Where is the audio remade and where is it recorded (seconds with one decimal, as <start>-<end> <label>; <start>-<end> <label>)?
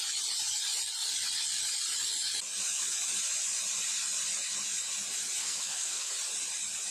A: 0.0-5.4 recorded; 5.4-6.1 remade; 6.1-6.9 recorded